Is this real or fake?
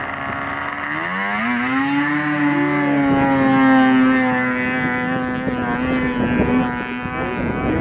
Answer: real